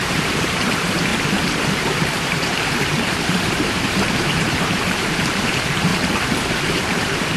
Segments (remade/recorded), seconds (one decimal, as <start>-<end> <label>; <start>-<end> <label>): 0.0-1.1 remade; 1.1-1.7 recorded; 1.7-5.9 remade; 5.9-6.5 recorded; 6.5-7.4 remade